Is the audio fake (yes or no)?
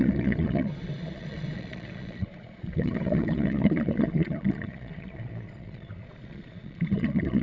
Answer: yes